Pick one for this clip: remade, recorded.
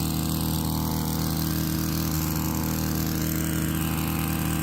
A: recorded